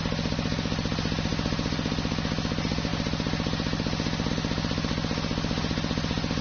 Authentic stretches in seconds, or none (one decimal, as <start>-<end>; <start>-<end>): 0.0-6.4